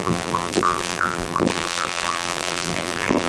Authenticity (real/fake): fake